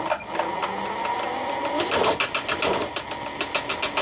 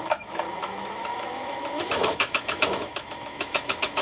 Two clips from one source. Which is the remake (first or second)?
second